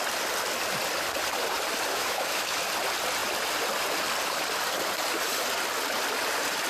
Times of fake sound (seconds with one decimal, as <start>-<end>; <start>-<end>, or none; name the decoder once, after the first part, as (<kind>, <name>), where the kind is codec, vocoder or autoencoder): 1.9-2.6 (autoencoder, DAC-VAE)